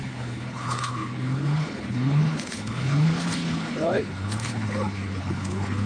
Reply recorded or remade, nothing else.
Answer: remade